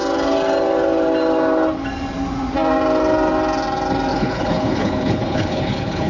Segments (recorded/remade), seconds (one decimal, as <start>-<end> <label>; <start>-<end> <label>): 0.0-4.1 recorded; 4.1-6.1 remade